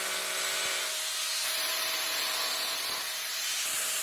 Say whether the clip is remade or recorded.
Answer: remade